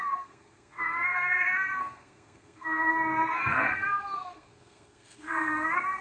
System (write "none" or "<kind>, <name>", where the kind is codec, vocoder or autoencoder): codec, SNAC